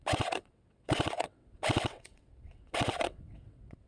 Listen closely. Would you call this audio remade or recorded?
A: remade